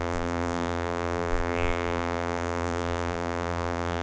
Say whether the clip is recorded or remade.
remade